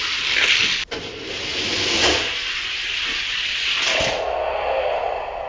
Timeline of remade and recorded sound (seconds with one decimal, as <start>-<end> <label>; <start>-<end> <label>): 0.0-0.5 remade; 0.5-1.5 recorded; 1.5-4.2 remade; 4.2-5.5 recorded